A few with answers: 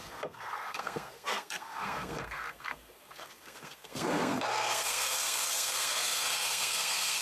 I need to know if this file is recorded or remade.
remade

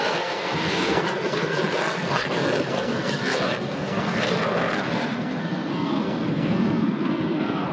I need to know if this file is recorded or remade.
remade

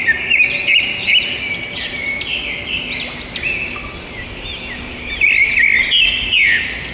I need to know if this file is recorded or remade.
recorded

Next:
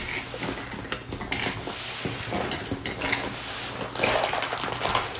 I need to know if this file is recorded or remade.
recorded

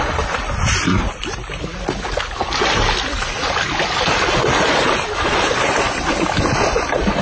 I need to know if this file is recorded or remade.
recorded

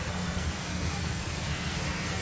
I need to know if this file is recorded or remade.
remade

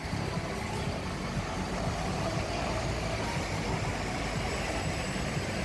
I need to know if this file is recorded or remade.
recorded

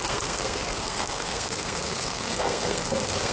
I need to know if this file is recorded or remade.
remade